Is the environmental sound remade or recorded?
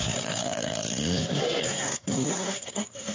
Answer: remade